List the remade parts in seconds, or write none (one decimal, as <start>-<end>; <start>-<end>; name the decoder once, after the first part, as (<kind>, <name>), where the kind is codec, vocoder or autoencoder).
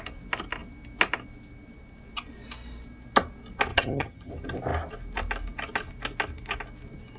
3.7-4.3 (vocoder, HiFi-GAN)